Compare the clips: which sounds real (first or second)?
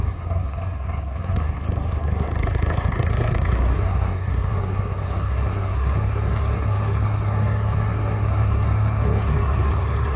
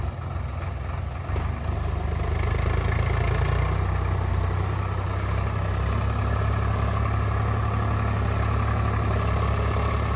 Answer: second